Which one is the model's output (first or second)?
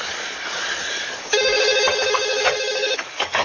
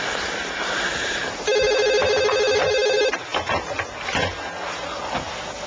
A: first